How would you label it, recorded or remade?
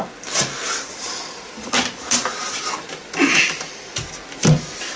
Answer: recorded